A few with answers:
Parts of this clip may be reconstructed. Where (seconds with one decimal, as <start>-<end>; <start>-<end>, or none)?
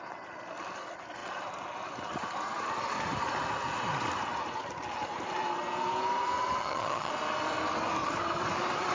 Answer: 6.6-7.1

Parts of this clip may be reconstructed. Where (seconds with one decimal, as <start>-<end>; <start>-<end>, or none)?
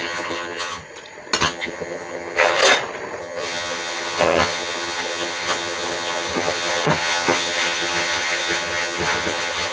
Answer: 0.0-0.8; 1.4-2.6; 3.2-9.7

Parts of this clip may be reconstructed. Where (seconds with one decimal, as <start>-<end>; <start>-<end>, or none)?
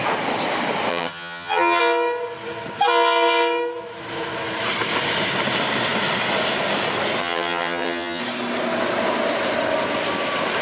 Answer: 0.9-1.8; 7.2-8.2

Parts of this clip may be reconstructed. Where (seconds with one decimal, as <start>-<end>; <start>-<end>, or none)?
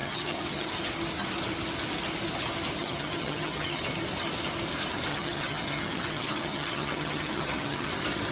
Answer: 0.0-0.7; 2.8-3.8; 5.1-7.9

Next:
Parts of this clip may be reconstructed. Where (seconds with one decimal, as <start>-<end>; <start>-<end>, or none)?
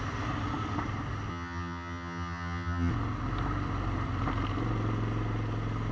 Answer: 1.3-2.9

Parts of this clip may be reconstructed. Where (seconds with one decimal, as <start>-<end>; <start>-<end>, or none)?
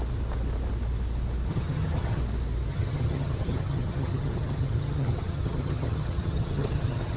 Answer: 1.5-2.2; 2.7-7.2